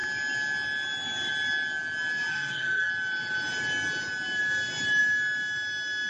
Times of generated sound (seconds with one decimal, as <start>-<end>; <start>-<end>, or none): 2.3-2.9